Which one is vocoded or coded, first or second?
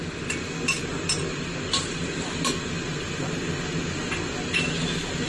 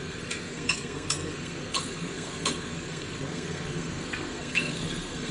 second